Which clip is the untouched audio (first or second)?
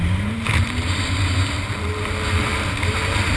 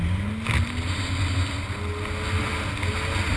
second